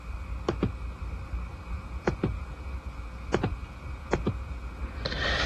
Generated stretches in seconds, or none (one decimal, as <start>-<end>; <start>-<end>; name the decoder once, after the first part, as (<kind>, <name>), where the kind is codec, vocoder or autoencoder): 1.5-4.8 (vocoder, Vocos)